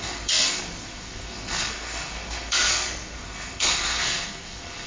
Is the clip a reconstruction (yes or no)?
yes